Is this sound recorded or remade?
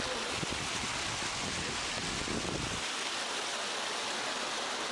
recorded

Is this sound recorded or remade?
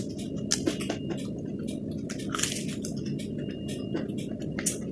recorded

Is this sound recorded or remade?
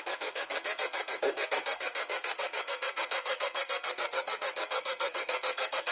remade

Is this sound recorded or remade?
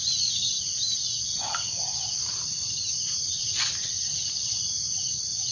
recorded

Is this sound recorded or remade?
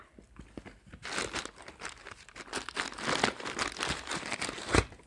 recorded